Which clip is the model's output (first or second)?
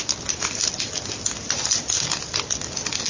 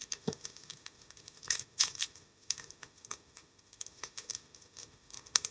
second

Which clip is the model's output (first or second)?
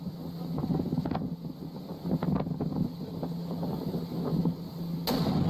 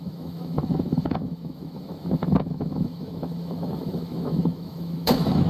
second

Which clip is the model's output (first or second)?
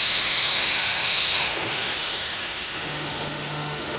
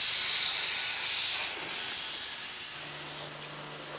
first